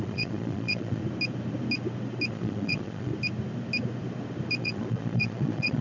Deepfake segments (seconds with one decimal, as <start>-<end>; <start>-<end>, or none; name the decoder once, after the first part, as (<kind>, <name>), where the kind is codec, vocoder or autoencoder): 0.0-1.0 (vocoder, Vocos); 2.3-3.1; 4.6-5.8

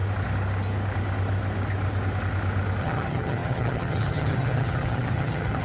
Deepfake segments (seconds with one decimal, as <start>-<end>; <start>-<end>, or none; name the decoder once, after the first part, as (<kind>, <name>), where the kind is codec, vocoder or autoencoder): 2.8-5.6 (vocoder, HiFi-GAN)